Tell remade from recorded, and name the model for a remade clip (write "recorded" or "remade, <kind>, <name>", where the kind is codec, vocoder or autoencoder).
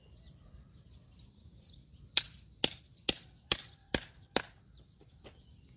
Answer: recorded